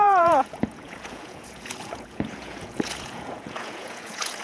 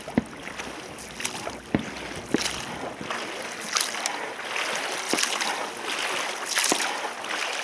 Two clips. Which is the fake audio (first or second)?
first